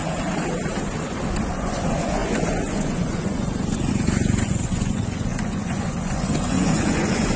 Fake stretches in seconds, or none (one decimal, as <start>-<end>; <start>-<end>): 1.5-7.4

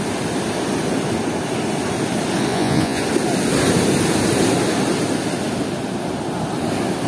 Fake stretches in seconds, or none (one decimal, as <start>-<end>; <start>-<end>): 2.5-3.0

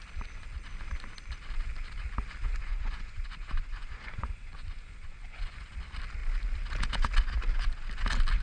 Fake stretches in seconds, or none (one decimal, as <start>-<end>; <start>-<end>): 2.4-5.7

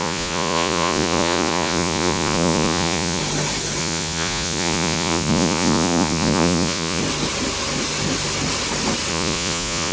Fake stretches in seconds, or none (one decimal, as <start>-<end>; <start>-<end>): 0.0-3.2; 3.8-7.0; 9.1-9.9

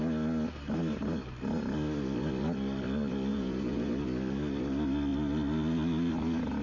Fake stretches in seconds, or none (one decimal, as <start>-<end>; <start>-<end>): 3.3-3.9

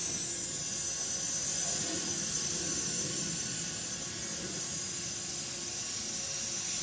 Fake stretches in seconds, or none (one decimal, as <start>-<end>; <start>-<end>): 1.5-2.7